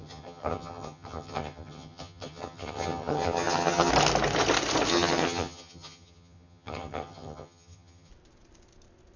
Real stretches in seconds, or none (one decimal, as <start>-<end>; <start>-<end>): 3.9-4.9; 8.1-9.2